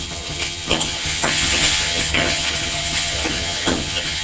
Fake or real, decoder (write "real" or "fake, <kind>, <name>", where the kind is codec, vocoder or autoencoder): fake, vocoder, HiFi-GAN